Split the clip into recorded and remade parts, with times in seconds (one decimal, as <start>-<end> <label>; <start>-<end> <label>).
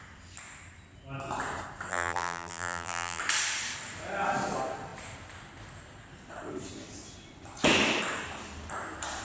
0.0-1.9 recorded; 1.9-3.2 remade; 3.2-9.2 recorded